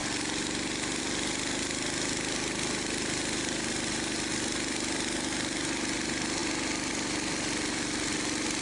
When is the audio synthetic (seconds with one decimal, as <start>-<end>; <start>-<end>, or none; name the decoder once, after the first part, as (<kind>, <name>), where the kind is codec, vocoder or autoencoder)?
none